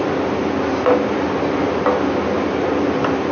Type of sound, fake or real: real